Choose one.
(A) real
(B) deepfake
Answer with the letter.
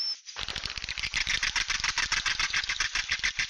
B